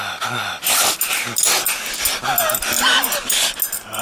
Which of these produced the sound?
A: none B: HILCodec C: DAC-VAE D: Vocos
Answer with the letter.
A